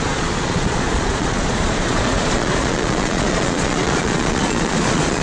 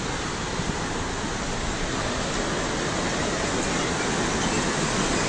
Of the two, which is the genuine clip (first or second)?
second